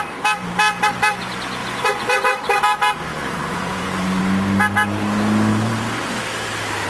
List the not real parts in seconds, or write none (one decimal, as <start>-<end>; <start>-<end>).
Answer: 1.6-2.6; 3.1-4.2; 5.5-6.2